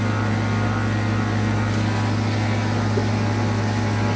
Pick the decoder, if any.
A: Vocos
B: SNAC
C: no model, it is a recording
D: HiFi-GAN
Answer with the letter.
C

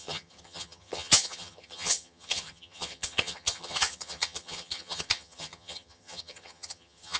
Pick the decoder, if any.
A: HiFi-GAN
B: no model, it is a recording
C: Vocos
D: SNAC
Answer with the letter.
A